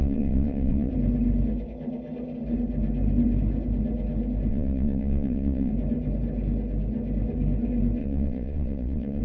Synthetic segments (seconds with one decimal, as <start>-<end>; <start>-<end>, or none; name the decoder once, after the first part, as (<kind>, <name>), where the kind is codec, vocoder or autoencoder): 0.0-0.9 (vocoder, WaveNeXt); 4.5-5.7; 8.0-9.2